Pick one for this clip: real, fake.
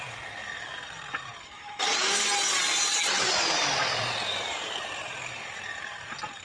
real